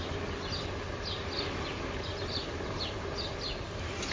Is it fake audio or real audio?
real